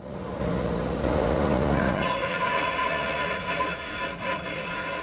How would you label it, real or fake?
fake